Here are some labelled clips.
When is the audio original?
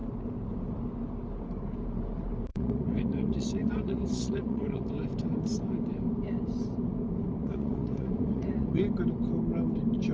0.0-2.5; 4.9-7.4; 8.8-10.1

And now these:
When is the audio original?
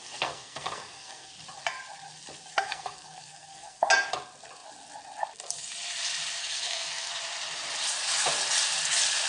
1.3-2.5; 3.9-6.4; 7.1-9.3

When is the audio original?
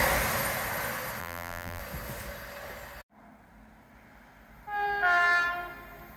0.0-1.2; 1.8-6.2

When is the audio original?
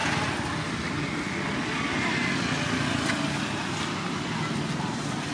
0.0-5.3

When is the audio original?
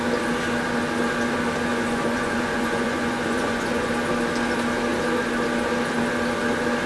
0.0-1.7; 3.9-6.9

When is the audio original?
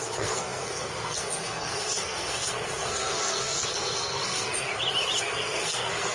4.7-5.2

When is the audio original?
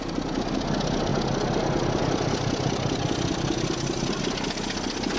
0.0-5.2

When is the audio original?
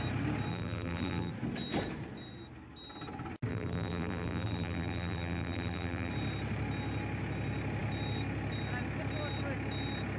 0.0-0.5; 1.3-3.5; 6.1-10.2